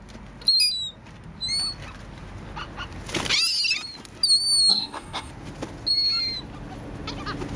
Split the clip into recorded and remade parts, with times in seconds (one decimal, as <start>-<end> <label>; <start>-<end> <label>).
0.0-4.7 recorded; 4.7-5.3 remade; 5.3-7.6 recorded